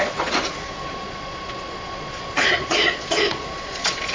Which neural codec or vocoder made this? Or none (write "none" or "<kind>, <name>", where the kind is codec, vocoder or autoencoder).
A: vocoder, Vocos